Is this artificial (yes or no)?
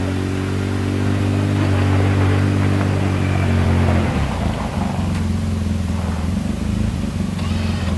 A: no